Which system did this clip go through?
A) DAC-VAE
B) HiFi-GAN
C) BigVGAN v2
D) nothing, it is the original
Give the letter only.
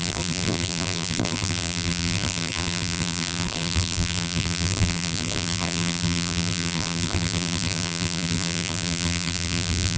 C